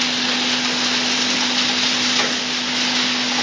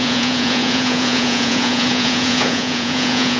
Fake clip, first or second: second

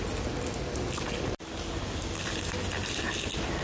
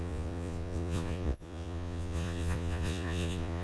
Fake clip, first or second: second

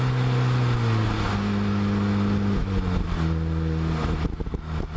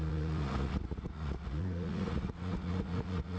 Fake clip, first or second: second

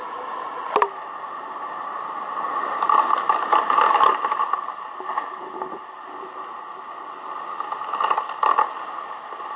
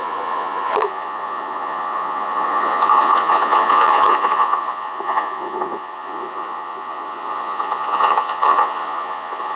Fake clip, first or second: second